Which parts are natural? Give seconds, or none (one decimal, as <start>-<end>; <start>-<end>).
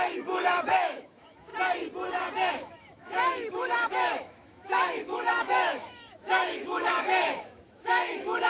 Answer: 1.5-2.5